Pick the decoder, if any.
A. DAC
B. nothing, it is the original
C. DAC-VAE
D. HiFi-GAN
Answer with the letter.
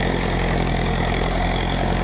A